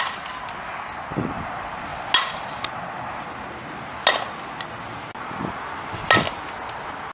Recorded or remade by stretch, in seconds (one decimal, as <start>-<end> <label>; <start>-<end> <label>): 0.0-7.1 recorded